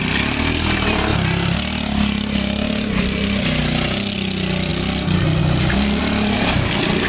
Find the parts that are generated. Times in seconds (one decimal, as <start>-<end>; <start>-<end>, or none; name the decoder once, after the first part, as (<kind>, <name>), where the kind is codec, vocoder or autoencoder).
none